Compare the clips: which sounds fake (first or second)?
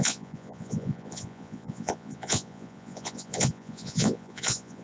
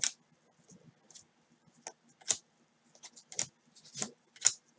first